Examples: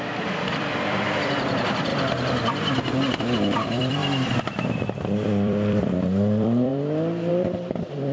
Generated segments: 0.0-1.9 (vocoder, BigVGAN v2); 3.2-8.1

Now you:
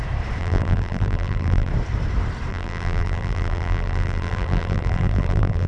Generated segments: 0.4-1.7 (vocoder, BigVGAN v2); 2.5-5.7

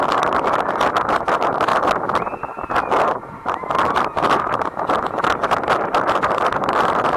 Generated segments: none

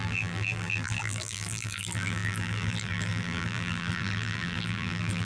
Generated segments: 0.0-5.2 (vocoder, BigVGAN v2)